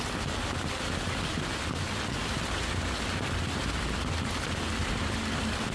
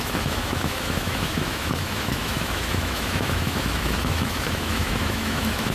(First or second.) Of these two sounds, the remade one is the second